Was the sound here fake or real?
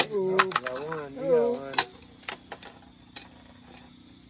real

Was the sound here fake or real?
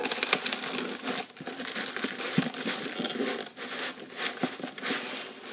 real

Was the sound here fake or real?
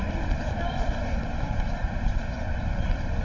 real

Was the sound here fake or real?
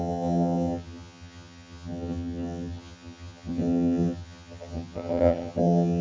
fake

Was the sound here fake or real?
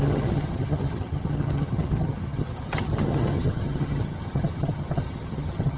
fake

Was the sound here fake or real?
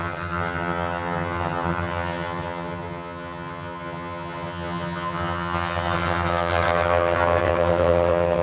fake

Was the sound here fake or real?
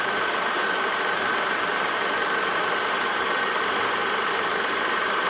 real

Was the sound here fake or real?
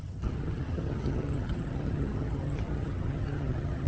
fake